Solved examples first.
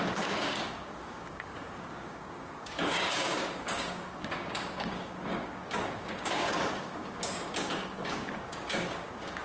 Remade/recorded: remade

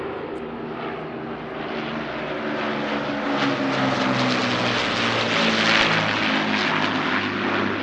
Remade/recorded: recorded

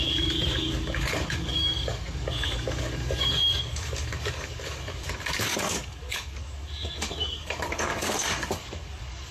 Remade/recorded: remade